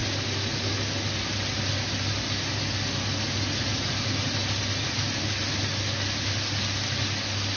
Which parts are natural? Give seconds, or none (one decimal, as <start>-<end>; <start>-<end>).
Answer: 0.0-7.6